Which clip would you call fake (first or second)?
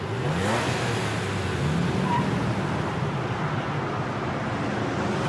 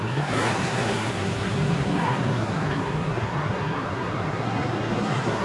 second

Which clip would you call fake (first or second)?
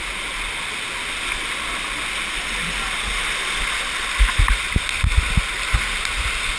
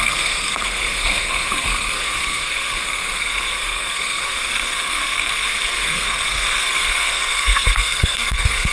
second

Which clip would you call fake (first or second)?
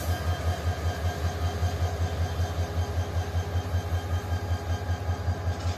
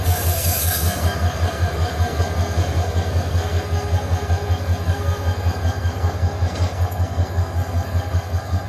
second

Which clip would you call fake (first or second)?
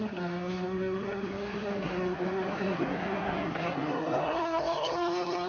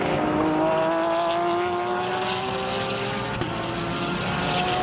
first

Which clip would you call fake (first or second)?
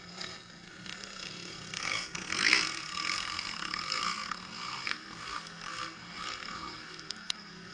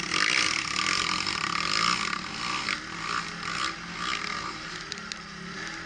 first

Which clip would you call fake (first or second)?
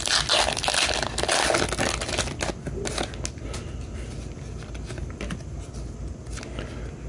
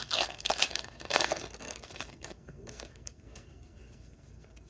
second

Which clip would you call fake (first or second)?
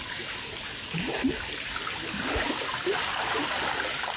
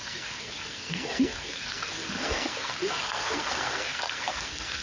second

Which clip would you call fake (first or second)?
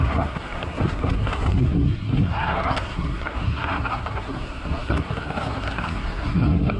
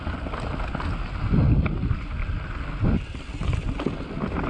first